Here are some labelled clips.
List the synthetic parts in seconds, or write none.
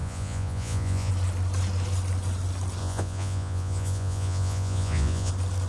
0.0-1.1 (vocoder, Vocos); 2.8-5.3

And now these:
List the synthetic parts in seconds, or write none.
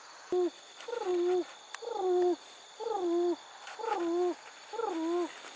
none